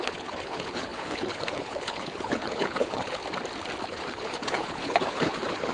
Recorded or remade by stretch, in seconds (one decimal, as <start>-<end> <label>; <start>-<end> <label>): 0.0-3.2 remade; 3.2-3.8 recorded; 3.8-5.7 remade